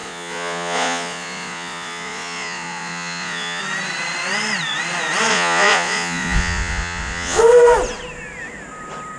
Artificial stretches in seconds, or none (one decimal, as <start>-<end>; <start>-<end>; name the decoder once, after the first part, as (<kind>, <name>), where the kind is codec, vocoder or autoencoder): 0.0-3.6 (vocoder, Vocos); 5.3-7.4